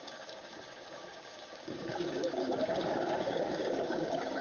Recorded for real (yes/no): no